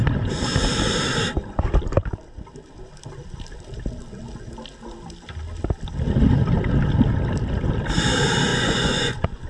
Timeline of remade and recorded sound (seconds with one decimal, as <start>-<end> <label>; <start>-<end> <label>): 0.0-8.5 recorded; 8.5-9.5 remade